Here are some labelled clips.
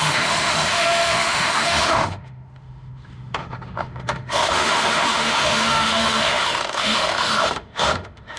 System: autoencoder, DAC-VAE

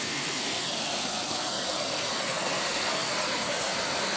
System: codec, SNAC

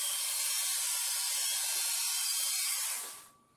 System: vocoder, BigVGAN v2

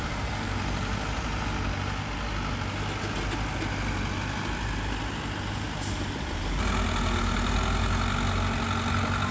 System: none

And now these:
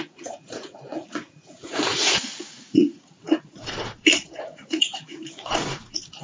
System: vocoder, Vocos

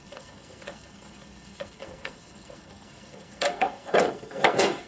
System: codec, SNAC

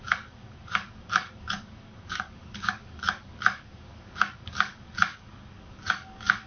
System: codec, DAC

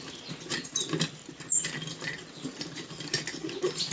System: none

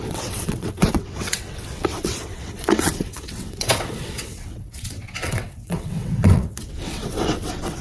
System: vocoder, WaveNeXt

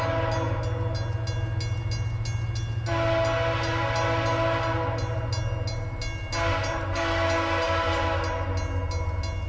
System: none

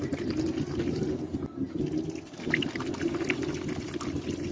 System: none